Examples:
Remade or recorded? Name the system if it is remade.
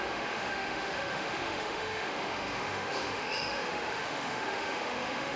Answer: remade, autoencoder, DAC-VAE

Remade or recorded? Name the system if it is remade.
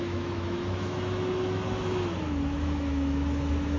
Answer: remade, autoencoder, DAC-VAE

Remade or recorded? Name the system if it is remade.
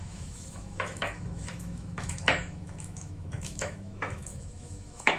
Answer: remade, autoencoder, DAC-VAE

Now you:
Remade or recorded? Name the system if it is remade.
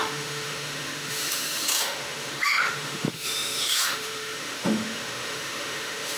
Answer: remade, autoencoder, DAC-VAE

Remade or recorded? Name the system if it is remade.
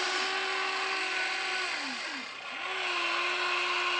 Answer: recorded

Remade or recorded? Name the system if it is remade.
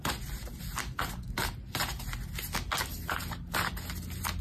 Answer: recorded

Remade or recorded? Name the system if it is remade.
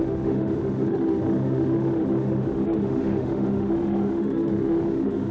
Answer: remade, autoencoder, DAC-VAE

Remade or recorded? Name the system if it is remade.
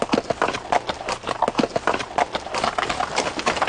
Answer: recorded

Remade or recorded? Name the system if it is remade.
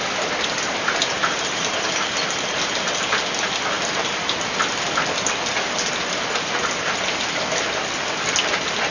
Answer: recorded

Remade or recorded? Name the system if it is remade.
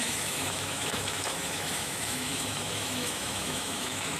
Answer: remade, autoencoder, DAC-VAE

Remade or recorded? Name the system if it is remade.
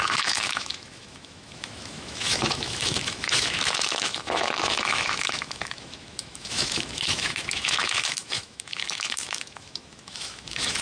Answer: remade, autoencoder, DAC-VAE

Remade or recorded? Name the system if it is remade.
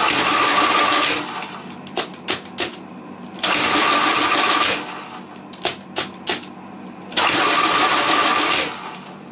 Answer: recorded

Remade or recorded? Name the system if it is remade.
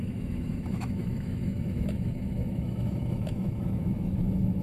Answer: remade, autoencoder, DAC-VAE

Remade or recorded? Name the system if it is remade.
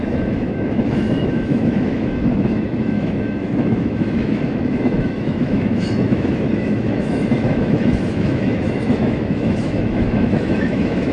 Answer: remade, autoencoder, DAC-VAE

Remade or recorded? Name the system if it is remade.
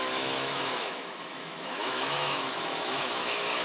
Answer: remade, autoencoder, DAC-VAE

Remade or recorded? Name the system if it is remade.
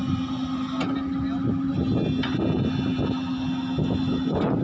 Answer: recorded